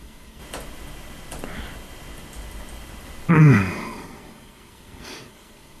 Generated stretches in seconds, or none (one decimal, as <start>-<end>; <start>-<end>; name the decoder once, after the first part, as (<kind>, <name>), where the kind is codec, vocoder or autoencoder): 0.0-0.4 (codec, SNAC); 3.3-5.8